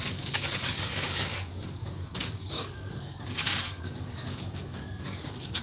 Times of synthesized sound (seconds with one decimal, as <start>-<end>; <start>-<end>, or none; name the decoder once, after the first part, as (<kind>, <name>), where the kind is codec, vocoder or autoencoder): 0.0-5.6 (codec, DAC)